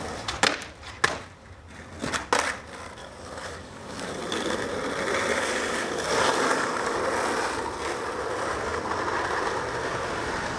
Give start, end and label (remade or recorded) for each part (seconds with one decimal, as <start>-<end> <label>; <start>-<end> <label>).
0.0-3.0 recorded; 3.0-4.2 remade; 4.2-5.3 recorded; 5.3-7.0 remade; 7.0-10.6 recorded